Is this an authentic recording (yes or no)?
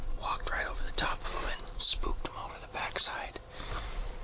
no